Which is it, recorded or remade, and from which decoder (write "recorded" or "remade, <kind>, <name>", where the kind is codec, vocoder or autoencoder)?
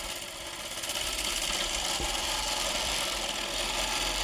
recorded